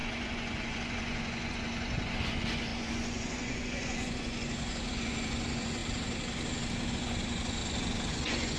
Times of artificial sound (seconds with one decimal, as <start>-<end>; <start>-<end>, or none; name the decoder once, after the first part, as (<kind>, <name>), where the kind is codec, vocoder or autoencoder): 0.0-5.8 (vocoder, Vocos); 6.9-7.6; 8.1-8.6